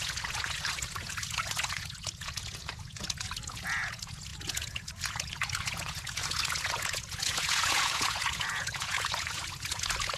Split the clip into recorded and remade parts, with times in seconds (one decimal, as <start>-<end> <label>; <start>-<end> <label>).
0.0-10.2 remade